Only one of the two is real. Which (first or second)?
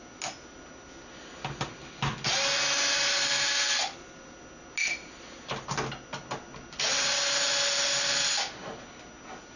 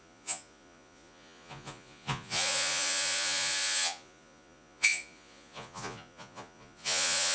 first